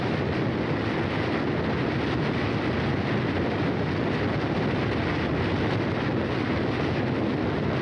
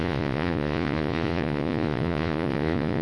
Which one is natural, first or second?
first